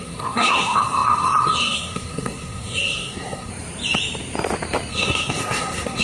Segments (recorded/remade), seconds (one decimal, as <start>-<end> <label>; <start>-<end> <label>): 0.0-3.5 remade; 3.5-4.9 recorded; 4.9-6.0 remade